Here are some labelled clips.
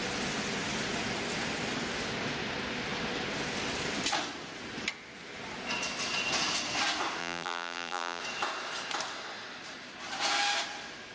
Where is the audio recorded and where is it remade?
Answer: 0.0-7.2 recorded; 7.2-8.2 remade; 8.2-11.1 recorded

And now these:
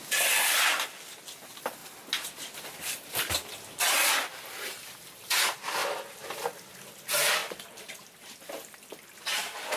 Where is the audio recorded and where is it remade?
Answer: 0.0-1.8 recorded; 1.8-4.1 remade; 4.1-7.4 recorded; 7.4-8.5 remade; 8.5-9.8 recorded

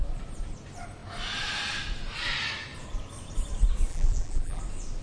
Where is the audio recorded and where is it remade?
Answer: 0.0-3.9 recorded; 3.9-4.6 remade; 4.6-5.0 recorded

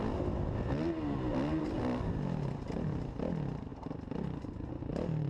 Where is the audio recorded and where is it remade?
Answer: 0.0-5.3 recorded

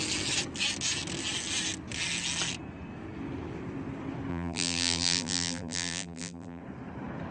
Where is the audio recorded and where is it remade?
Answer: 0.0-4.3 recorded; 4.3-6.6 remade; 6.6-7.3 recorded